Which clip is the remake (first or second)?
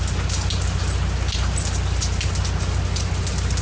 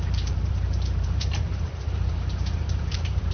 second